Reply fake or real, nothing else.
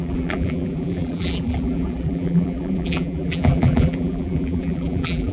fake